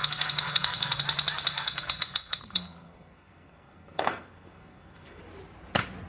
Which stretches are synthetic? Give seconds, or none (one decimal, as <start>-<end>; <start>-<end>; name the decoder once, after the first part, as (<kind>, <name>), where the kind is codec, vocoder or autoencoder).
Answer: 0.0-1.0 (codec, SNAC); 1.5-5.2